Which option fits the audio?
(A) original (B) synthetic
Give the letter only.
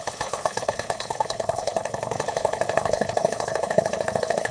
B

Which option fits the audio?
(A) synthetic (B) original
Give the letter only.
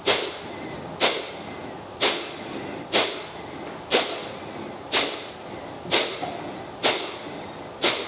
B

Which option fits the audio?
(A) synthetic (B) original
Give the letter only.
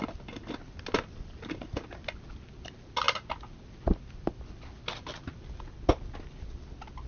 B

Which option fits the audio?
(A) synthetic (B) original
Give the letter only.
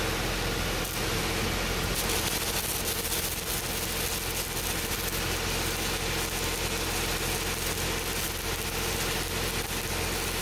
B